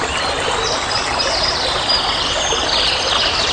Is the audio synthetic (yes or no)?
no